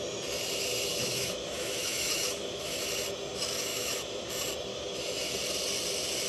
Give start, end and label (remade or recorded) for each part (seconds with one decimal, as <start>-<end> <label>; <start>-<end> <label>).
0.0-0.9 recorded; 0.9-2.8 remade; 2.8-3.7 recorded; 3.7-4.3 remade; 4.3-4.7 recorded; 4.7-5.3 remade; 5.3-6.3 recorded